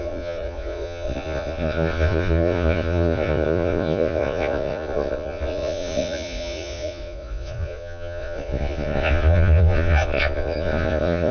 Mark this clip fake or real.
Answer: fake